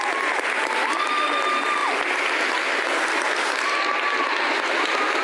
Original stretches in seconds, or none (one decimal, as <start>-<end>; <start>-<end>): 0.0-5.2